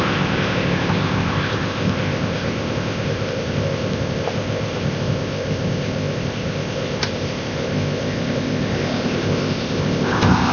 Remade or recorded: remade